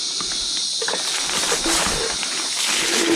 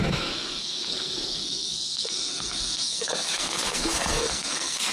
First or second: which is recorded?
first